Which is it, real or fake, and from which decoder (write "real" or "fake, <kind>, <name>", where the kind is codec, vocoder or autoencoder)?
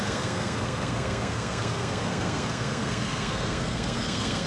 fake, codec, SNAC